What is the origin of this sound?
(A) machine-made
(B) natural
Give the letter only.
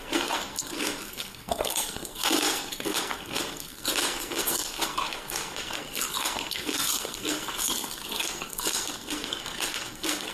A